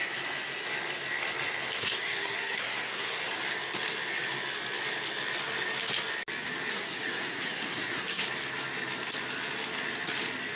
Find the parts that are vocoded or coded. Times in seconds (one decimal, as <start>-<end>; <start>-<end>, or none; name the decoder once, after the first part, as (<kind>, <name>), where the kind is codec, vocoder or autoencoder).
1.8-3.2 (codec, SNAC); 6.7-8.2